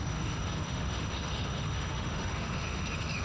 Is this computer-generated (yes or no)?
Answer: yes